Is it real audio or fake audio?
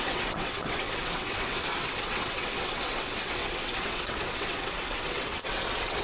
fake